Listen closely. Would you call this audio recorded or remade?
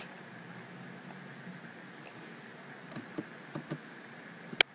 recorded